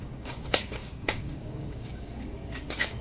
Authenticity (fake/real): fake